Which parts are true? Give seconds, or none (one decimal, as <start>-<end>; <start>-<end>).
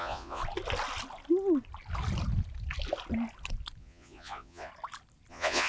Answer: 0.4-3.8; 4.7-5.3